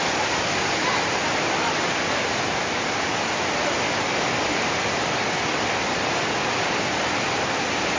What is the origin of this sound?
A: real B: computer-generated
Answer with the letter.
A